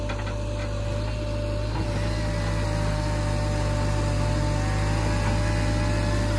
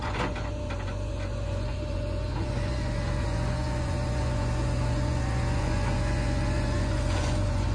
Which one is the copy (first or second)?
second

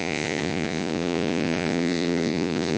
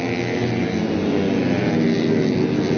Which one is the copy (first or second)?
first